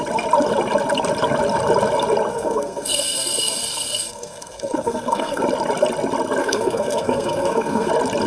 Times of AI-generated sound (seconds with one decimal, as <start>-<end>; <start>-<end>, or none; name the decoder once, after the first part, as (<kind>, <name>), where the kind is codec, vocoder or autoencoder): 2.3-5.4 (codec, SNAC); 6.4-7.9